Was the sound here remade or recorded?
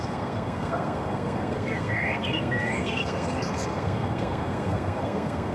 remade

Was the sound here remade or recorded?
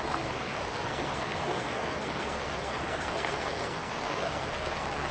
remade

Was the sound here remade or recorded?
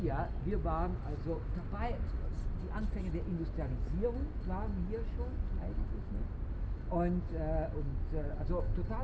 recorded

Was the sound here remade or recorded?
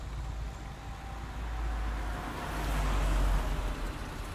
recorded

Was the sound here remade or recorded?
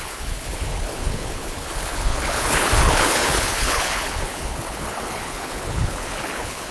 remade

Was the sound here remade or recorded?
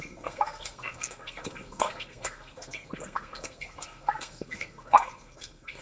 remade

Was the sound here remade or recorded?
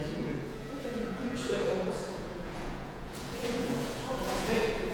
remade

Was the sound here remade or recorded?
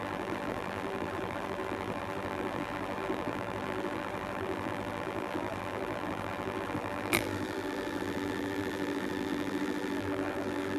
remade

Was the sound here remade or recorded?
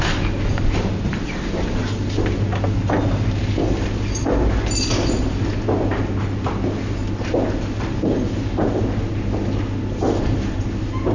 recorded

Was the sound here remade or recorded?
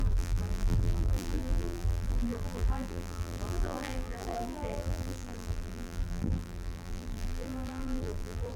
remade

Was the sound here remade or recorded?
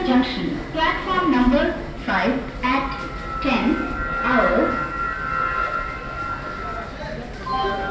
recorded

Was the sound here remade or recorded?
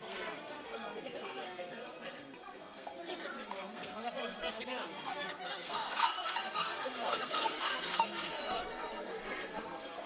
remade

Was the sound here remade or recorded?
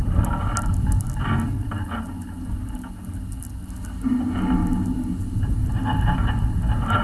recorded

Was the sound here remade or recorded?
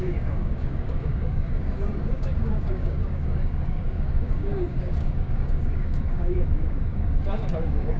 remade